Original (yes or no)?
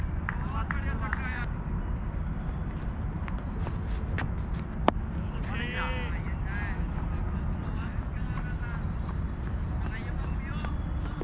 yes